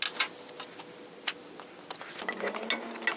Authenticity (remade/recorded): recorded